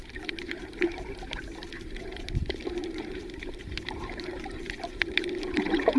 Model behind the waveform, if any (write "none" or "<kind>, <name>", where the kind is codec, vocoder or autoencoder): vocoder, BigVGAN v2